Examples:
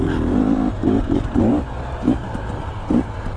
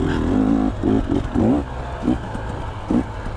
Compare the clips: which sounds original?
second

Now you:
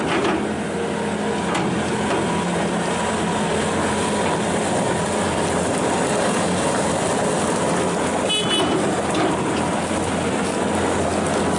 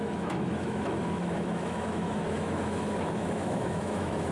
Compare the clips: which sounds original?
first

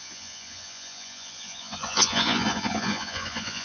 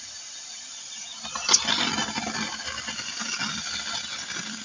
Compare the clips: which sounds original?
second